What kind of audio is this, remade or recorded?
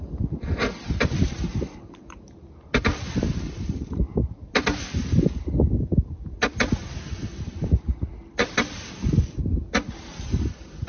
recorded